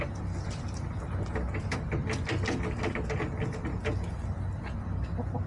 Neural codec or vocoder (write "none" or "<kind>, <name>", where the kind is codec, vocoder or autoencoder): none